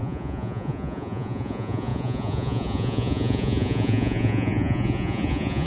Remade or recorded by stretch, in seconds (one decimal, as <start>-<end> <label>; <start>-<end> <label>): 0.0-5.7 remade